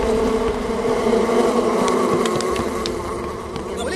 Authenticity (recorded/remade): recorded